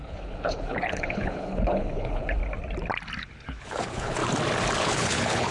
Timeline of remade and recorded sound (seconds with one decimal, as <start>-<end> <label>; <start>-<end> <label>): 0.0-2.4 remade; 2.4-3.2 recorded; 3.2-4.2 remade; 4.2-4.8 recorded; 4.8-5.5 remade